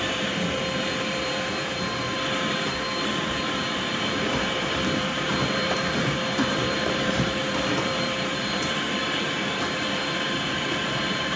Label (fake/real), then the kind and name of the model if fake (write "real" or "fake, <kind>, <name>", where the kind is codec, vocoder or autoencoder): fake, vocoder, BigVGAN v2